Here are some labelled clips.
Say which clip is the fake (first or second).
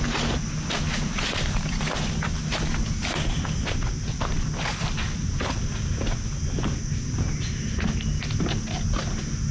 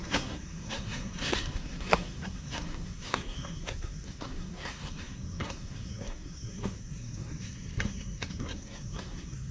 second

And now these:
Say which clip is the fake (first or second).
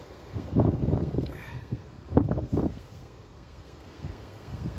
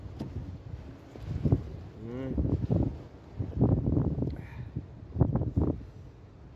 first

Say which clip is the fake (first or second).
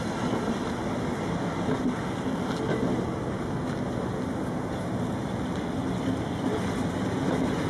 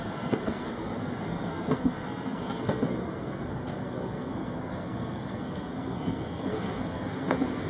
second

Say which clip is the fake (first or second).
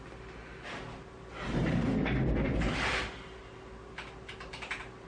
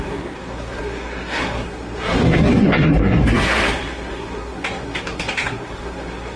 second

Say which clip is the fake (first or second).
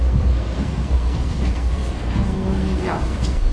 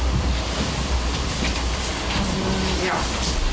first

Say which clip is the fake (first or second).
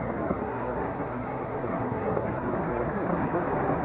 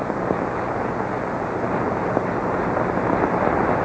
first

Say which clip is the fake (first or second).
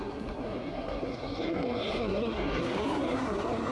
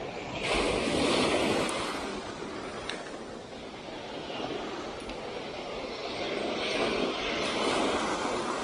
first